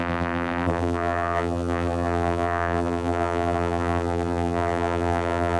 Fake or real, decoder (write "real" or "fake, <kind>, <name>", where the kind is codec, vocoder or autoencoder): fake, vocoder, BigVGAN v2